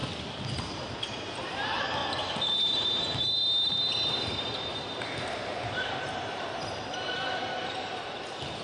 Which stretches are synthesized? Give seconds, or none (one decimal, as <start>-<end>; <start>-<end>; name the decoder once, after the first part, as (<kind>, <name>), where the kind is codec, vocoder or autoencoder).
1.3-2.0 (vocoder, BigVGAN v2); 2.5-8.6

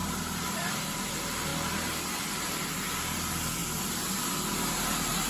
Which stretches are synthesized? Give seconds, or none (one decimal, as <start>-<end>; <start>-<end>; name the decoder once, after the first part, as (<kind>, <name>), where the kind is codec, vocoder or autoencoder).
0.0-1.5 (vocoder, BigVGAN v2); 2.3-5.3

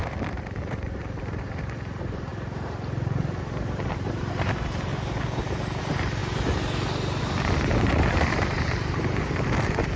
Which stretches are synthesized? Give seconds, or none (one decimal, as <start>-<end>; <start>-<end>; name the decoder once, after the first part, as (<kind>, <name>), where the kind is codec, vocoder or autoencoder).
0.0-4.9 (vocoder, BigVGAN v2); 5.8-6.2; 7.2-10.0

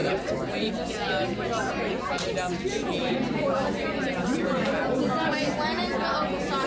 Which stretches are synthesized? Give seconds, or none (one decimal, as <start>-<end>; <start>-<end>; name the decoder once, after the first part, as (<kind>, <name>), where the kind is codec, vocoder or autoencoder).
0.0-0.7 (vocoder, BigVGAN v2); 3.0-4.4

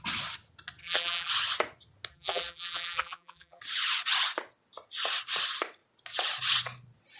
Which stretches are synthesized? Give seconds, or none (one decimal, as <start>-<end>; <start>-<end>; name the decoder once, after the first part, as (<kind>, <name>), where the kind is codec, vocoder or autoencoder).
0.8-1.3 (vocoder, BigVGAN v2); 2.1-3.6

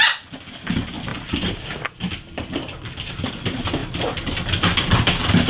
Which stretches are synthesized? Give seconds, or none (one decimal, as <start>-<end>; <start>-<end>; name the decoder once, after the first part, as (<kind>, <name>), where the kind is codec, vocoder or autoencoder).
1.1-3.3 (vocoder, BigVGAN v2)

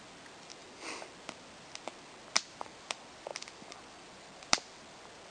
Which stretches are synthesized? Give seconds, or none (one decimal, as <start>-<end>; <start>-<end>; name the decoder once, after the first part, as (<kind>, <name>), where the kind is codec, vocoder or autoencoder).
0.6-1.2 (vocoder, BigVGAN v2); 3.3-4.8

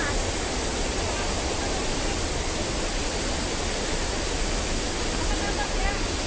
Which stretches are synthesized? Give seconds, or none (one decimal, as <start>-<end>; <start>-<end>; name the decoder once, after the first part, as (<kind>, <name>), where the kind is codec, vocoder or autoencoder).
0.7-1.4 (vocoder, BigVGAN v2); 1.9-5.7